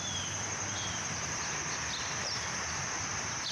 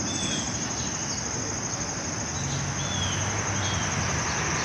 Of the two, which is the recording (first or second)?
second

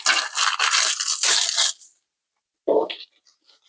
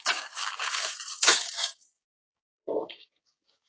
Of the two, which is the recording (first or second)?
first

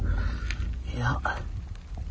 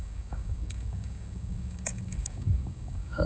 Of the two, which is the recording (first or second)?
first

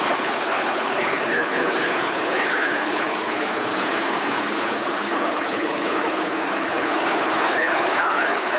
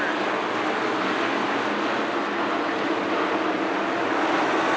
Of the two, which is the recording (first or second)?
second